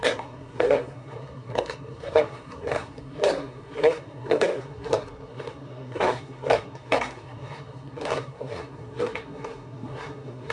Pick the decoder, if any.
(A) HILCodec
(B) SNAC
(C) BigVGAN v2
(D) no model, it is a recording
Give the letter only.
B